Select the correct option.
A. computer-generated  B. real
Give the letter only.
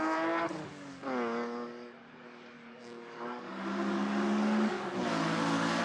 A